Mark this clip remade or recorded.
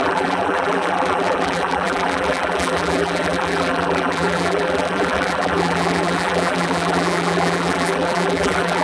remade